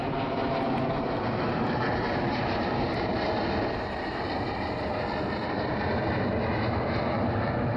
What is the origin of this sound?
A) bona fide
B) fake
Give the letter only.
B